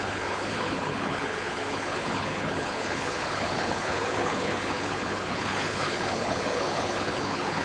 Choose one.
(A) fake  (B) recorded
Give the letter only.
A